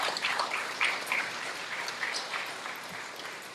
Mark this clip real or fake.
fake